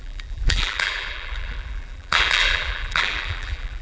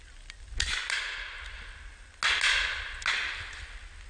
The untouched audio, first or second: second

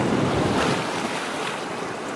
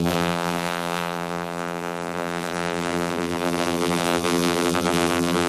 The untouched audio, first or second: first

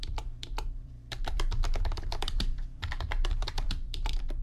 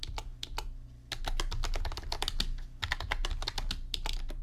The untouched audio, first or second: second